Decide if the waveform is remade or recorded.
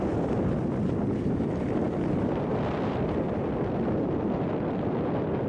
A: recorded